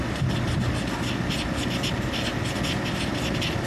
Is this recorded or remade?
recorded